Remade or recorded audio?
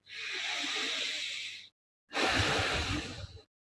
recorded